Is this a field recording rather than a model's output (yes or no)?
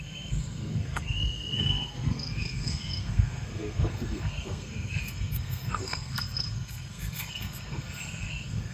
no